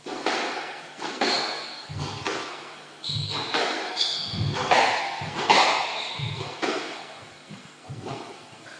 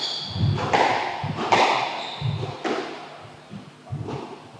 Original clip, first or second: second